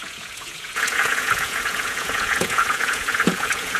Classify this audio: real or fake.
fake